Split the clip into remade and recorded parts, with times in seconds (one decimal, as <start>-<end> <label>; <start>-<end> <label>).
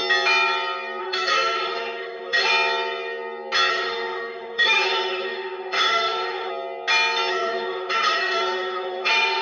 0.0-1.0 recorded; 1.0-2.5 remade; 2.5-3.7 recorded; 3.7-6.5 remade; 6.5-7.3 recorded; 7.3-9.4 remade